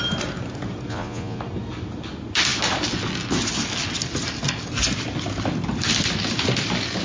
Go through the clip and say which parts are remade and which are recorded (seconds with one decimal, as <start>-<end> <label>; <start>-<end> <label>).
0.0-0.9 recorded; 0.9-1.4 remade; 1.4-7.0 recorded